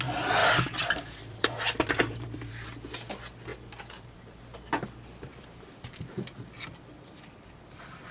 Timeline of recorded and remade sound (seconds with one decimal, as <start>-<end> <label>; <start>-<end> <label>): 0.0-0.4 recorded; 0.4-2.5 remade; 2.5-3.5 recorded; 3.5-4.4 remade; 4.4-5.3 recorded; 5.3-6.1 remade; 6.1-8.1 recorded